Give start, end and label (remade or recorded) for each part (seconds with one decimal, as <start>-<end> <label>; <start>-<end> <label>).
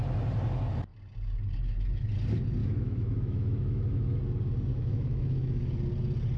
0.0-2.6 recorded; 2.6-4.2 remade; 4.2-4.7 recorded; 4.7-5.7 remade; 5.7-6.4 recorded